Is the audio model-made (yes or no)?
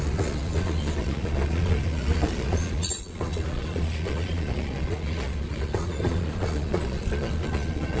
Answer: yes